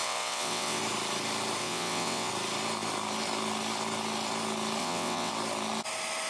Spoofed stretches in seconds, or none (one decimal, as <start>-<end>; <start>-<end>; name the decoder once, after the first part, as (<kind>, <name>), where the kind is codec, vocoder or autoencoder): 0.0-0.8 (vocoder, WaveNeXt); 1.6-2.3; 4.8-5.3